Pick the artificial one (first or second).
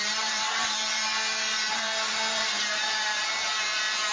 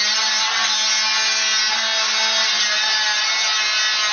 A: first